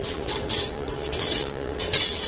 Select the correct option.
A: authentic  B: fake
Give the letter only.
B